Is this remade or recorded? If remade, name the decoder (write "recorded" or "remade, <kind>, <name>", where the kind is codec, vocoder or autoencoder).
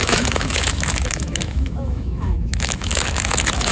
remade, autoencoder, DAC-VAE